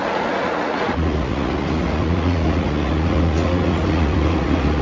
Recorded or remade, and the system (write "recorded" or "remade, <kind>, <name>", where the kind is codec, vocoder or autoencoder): remade, vocoder, Vocos